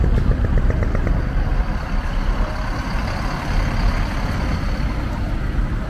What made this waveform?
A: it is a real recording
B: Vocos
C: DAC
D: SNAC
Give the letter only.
A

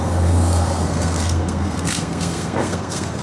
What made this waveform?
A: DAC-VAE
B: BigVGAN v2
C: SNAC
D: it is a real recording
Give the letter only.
C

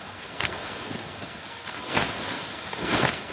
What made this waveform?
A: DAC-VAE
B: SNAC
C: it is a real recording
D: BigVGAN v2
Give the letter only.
B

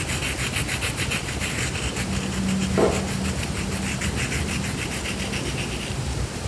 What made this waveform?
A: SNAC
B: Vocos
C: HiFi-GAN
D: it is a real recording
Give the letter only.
D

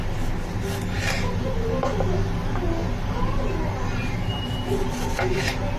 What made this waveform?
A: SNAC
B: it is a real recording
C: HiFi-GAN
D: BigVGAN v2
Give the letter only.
B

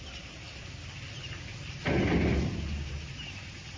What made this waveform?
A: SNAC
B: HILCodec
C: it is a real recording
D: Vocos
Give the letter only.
C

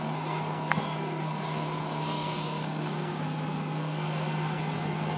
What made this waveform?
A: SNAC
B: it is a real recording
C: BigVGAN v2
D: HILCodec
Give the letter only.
A